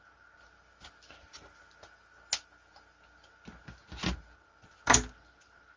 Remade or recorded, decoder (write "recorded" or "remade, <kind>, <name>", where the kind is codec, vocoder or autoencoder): recorded